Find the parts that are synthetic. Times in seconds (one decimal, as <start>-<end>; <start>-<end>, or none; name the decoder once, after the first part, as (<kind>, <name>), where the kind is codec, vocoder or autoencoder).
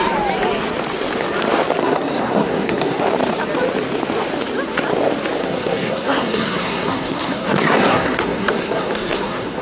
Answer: 1.8-3.0 (codec, SNAC); 5.4-9.6